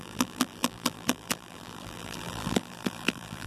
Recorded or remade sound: remade